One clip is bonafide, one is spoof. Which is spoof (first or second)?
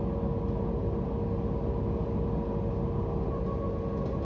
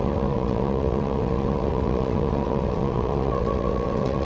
second